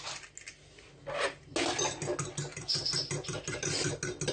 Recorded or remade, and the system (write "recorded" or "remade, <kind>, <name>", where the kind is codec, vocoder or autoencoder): recorded